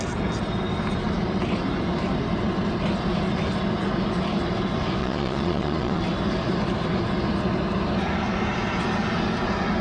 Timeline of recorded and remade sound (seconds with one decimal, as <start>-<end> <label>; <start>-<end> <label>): 0.0-5.0 recorded; 5.0-6.0 remade; 6.0-9.8 recorded